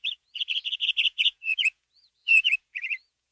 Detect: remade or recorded remade